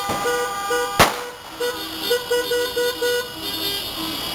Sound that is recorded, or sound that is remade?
recorded